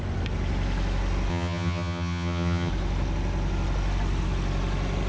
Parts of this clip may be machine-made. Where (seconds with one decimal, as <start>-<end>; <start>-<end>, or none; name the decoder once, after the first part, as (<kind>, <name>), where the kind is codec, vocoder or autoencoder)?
1.3-2.7 (vocoder, HiFi-GAN)